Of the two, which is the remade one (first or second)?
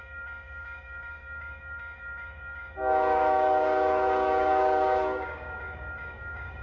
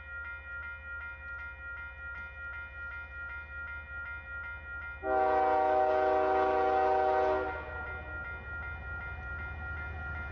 first